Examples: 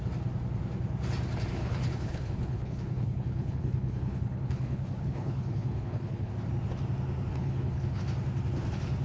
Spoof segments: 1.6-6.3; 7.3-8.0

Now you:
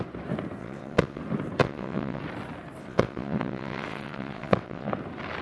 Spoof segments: 0.6-1.2; 1.6-2.2; 2.8-4.9

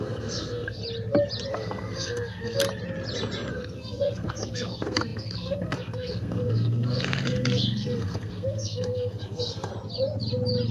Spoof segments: 0.0-0.8; 1.5-2.6; 3.5-9.7

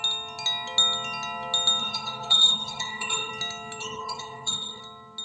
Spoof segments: 1.8-3.3; 3.8-4.8

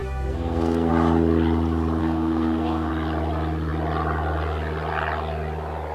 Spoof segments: 0.0-0.9; 2.0-2.9

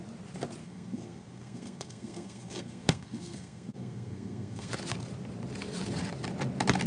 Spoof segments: 0.6-4.7

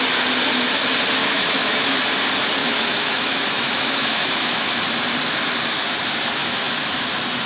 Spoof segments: 1.2-2.0; 2.6-4.7; 6.4-7.0

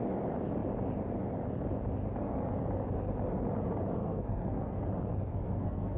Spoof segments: 4.0-4.8; 5.3-6.0